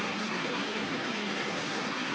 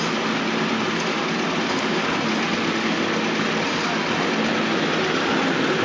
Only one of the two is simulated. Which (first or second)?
first